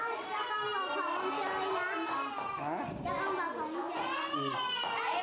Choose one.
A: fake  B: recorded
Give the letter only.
B